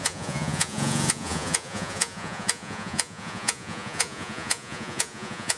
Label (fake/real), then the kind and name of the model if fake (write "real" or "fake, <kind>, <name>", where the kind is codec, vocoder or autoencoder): fake, vocoder, Vocos